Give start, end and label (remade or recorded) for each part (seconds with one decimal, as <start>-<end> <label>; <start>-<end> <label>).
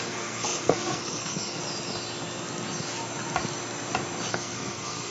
0.0-1.6 remade; 1.6-4.3 recorded; 4.3-5.1 remade